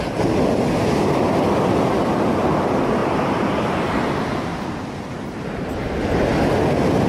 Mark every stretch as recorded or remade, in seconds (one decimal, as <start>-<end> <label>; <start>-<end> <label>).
0.0-7.1 recorded